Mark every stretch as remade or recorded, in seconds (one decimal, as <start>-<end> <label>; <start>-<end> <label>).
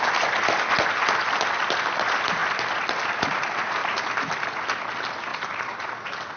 0.0-3.8 recorded; 3.8-4.3 remade; 4.3-5.3 recorded; 5.3-5.9 remade; 5.9-6.4 recorded